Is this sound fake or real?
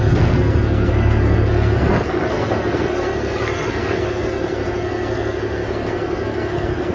fake